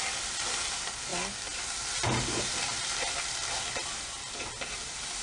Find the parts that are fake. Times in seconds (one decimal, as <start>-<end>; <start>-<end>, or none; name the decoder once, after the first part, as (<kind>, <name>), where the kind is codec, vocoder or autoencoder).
none